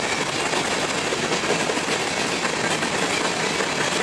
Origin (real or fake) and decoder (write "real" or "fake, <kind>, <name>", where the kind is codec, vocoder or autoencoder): real